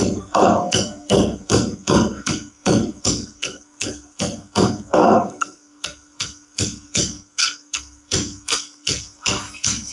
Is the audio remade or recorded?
remade